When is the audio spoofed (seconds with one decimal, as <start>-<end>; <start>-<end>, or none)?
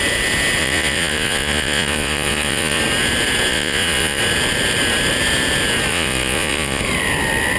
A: 0.6-2.8; 3.5-4.2; 5.9-6.8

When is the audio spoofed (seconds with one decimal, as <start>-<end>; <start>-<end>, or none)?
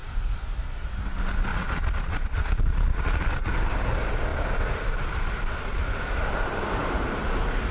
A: 1.5-3.5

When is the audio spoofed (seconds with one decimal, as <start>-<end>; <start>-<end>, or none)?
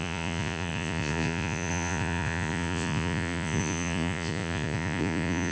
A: 0.0-5.5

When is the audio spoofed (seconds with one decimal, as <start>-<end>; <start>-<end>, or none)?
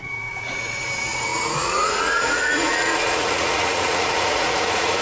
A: 0.0-5.0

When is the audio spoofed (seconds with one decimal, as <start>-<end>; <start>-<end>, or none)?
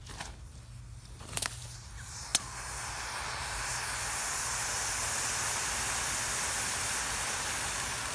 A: none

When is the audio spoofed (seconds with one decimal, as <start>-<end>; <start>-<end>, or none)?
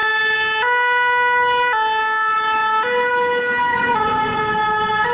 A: 3.7-4.4